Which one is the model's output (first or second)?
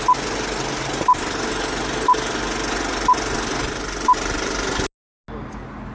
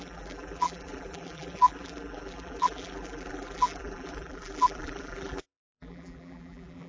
second